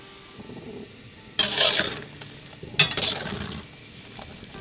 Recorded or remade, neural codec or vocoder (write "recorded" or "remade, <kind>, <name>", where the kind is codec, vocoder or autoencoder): recorded